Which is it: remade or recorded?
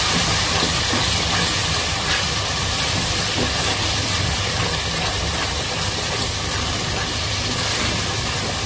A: remade